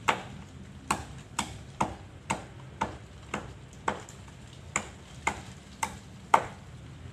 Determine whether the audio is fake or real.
real